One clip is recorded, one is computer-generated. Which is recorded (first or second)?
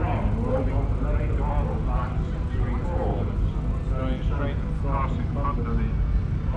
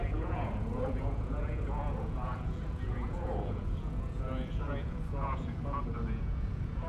first